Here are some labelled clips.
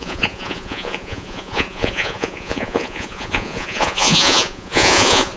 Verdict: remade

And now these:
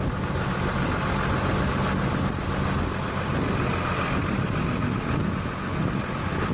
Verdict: recorded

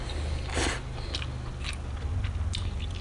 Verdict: recorded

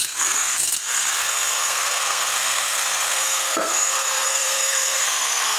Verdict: remade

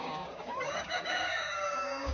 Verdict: remade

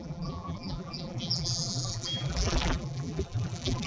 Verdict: remade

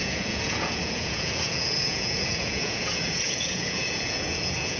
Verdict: remade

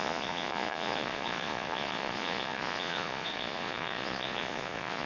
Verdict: remade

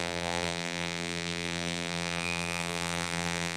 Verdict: remade